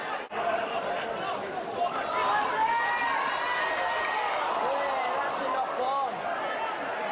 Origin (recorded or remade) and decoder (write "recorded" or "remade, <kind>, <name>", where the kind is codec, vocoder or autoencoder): recorded